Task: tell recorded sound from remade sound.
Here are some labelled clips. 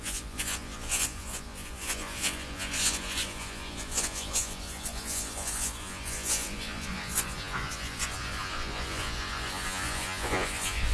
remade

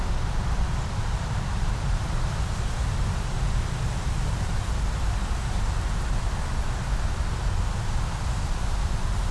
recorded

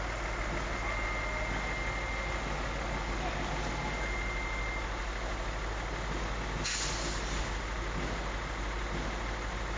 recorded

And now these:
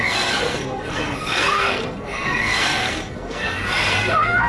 remade